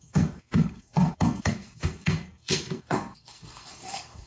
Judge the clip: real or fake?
fake